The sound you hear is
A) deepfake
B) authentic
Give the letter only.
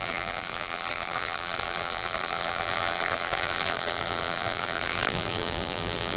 A